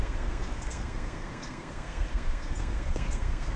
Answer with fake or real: fake